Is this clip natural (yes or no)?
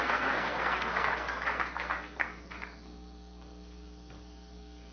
no